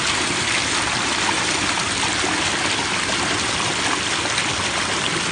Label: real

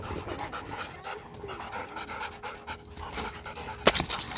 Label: real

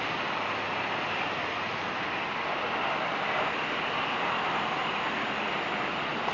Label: real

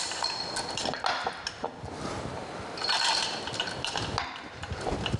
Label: real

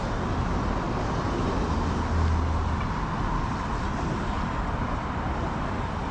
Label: real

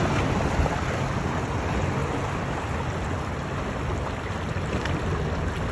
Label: real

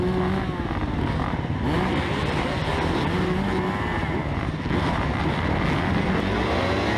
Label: real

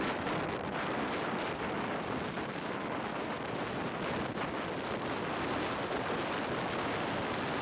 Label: real